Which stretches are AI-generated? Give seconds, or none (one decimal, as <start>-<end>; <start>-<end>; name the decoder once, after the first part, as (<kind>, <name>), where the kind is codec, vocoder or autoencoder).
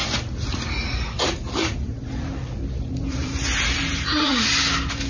1.1-2.0 (vocoder, BigVGAN v2); 2.9-4.3